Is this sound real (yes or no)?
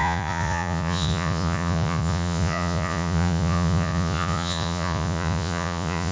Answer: no